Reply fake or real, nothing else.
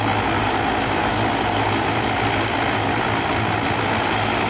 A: real